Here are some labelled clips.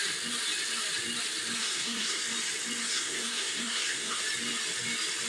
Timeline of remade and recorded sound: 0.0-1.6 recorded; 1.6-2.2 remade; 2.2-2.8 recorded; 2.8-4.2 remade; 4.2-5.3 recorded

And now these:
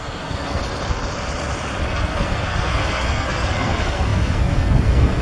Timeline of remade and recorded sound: 0.0-0.6 remade; 0.6-1.8 recorded; 1.8-5.2 remade

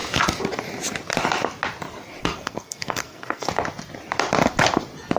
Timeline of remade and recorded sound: 0.0-2.2 recorded; 2.2-3.5 remade; 3.5-5.2 recorded

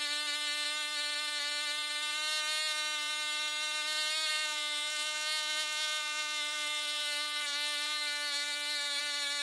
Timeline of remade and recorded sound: 0.0-4.3 recorded; 4.3-9.0 remade; 9.0-9.4 recorded